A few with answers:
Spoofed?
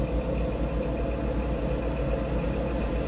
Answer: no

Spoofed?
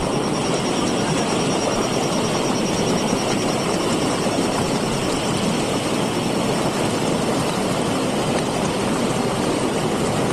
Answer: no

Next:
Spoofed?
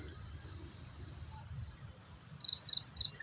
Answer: yes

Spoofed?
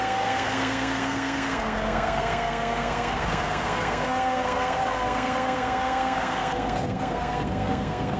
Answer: yes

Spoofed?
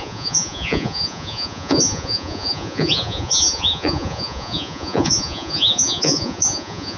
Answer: yes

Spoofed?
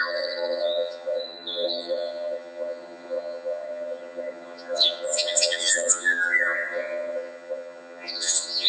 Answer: yes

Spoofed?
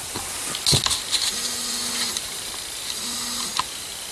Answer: no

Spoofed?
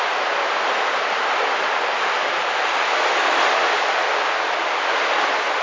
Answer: no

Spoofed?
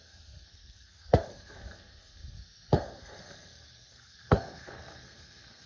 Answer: yes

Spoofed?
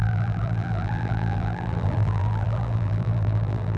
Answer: yes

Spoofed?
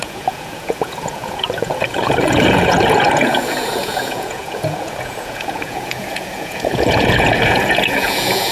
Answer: yes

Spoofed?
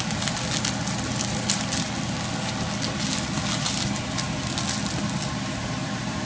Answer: no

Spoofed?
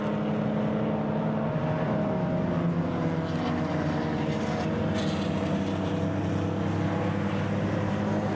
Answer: no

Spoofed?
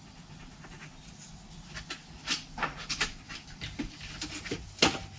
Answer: no